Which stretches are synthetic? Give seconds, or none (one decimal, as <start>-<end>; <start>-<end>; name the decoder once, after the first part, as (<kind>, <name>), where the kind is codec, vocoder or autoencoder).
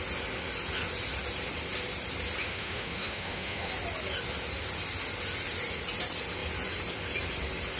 2.4-3.7 (autoencoder, DAC-VAE)